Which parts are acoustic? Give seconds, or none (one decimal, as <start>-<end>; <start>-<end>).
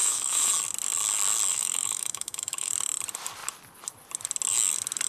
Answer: 0.5-1.5; 2.7-5.1